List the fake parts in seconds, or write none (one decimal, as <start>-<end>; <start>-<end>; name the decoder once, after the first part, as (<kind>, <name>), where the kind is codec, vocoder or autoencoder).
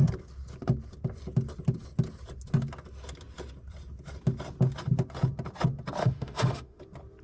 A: 6.0-6.8 (autoencoder, DAC-VAE)